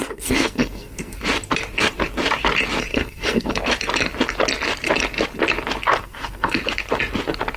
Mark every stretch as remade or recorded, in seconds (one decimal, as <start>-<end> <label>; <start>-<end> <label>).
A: 0.0-1.2 remade; 1.2-2.9 recorded; 2.9-3.6 remade; 3.6-6.0 recorded; 6.0-6.6 remade; 6.6-7.6 recorded